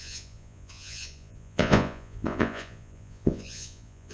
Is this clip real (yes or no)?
no